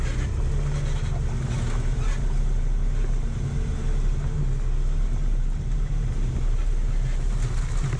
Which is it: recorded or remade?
recorded